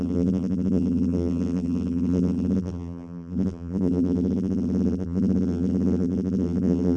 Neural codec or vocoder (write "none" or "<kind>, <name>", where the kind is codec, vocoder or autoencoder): vocoder, BigVGAN v2